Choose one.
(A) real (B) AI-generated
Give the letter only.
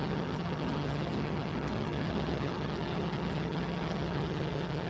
B